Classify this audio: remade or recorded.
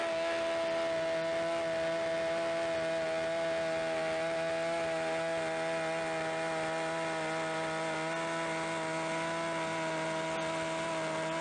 recorded